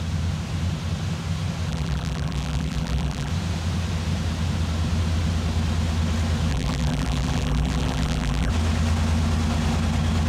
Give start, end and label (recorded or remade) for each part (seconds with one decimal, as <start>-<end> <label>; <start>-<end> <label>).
0.0-1.7 recorded; 1.7-3.3 remade; 3.3-6.5 recorded; 6.5-8.5 remade; 8.5-10.3 recorded